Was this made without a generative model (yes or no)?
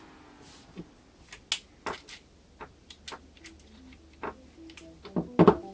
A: yes